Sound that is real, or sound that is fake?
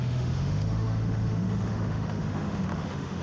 fake